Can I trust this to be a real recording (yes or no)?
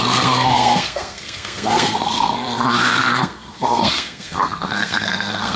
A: no